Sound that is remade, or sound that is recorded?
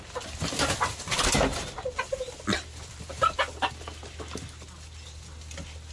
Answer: recorded